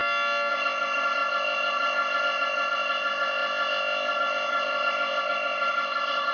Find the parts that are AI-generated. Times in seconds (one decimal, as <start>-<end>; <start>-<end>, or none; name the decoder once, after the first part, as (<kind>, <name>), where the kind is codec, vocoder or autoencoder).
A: 0.5-6.3 (codec, ZipCodec)